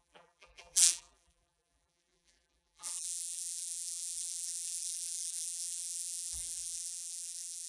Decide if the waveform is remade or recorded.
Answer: remade